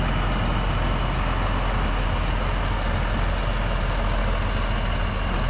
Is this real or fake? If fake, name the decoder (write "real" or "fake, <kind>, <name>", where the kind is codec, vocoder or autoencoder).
real